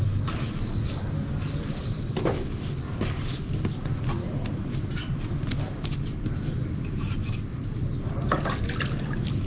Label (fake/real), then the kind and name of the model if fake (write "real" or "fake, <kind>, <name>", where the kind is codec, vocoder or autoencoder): real